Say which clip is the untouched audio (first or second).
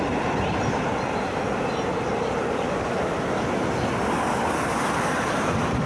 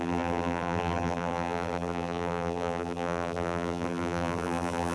first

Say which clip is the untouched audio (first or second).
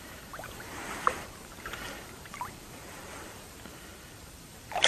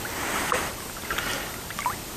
second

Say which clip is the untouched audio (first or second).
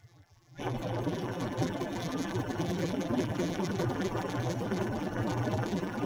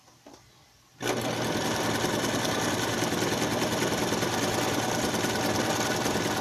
second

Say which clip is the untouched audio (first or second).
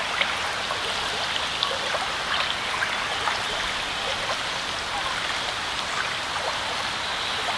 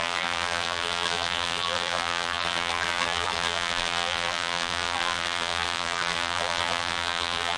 first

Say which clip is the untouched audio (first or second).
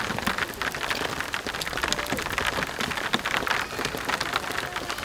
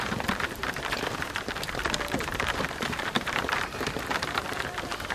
first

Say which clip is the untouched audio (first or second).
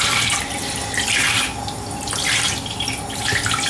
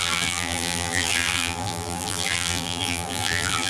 first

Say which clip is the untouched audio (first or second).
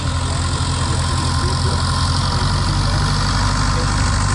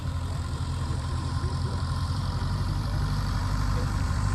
first